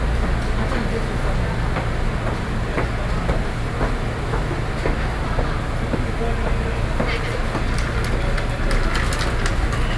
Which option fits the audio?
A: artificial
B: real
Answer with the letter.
B